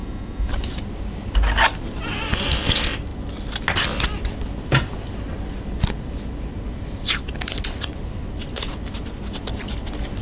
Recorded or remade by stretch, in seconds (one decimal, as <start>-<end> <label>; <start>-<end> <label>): 0.0-0.5 remade; 0.5-10.2 recorded